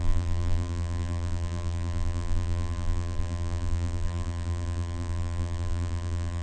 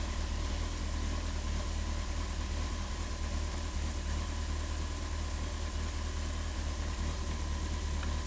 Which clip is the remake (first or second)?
first